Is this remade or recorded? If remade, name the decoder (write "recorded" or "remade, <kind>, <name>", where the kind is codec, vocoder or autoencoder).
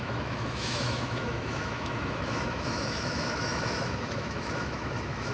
remade, autoencoder, DAC-VAE